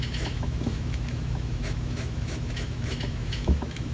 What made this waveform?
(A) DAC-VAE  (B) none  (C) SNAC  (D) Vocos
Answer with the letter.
A